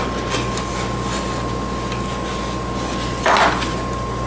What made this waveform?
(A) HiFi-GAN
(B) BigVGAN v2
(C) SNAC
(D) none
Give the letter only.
D